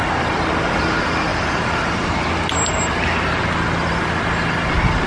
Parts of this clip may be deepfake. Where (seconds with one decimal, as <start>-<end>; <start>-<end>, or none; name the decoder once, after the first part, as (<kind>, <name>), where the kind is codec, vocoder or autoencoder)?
1.3-2.2 (vocoder, BigVGAN v2)